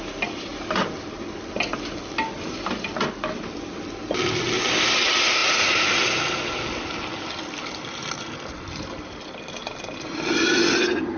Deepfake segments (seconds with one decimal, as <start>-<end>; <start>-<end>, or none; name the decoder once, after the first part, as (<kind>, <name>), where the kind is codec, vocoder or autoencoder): 0.0-0.5 (vocoder, BigVGAN v2)

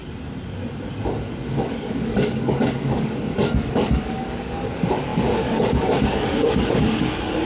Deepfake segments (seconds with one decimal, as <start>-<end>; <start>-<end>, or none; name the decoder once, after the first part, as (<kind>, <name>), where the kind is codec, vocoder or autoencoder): 1.7-7.5 (codec, DAC)

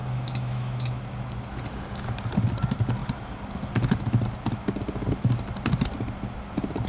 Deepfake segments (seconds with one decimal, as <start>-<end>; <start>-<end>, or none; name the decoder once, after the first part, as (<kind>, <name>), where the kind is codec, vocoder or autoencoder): 0.0-1.0 (autoencoder, DAC-VAE)

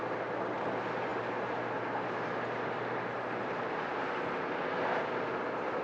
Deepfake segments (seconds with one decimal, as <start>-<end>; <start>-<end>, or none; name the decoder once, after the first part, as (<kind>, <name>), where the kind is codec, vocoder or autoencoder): none

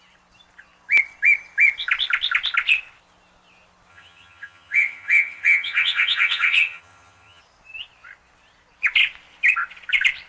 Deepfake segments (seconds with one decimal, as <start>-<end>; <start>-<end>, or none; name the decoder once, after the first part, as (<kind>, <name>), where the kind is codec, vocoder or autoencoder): 3.9-7.4 (vocoder, HiFi-GAN)

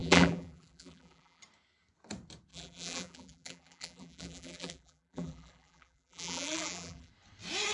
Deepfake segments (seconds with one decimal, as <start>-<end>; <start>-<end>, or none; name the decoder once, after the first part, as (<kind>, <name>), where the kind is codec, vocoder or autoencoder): 0.0-1.4 (vocoder, BigVGAN v2); 2.5-7.1

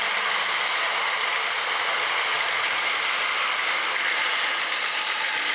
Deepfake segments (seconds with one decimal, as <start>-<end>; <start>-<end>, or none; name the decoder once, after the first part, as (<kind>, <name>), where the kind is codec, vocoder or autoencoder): none

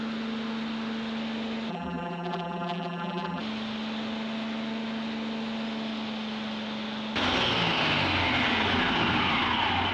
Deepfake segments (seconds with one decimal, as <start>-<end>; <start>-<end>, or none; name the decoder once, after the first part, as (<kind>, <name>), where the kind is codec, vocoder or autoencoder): 1.7-3.4 (vocoder, BigVGAN v2)